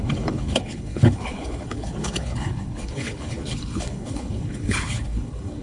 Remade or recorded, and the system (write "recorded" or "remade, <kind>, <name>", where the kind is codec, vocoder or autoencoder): remade, codec, HILCodec